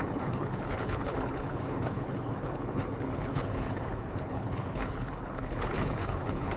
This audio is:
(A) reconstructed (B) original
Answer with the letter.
A